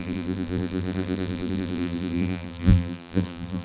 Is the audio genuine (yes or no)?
no